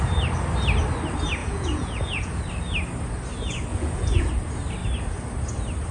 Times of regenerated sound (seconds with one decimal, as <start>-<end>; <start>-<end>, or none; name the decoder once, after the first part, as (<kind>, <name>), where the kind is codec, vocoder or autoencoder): 1.4-2.4 (vocoder, Vocos); 3.7-4.3